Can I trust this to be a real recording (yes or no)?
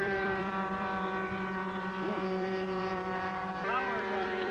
no